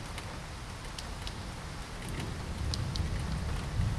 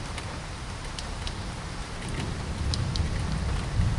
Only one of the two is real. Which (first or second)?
first